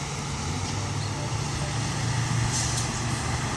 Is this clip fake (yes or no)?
no